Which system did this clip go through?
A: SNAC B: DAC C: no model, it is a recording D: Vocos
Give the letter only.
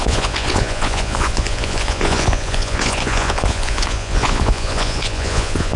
D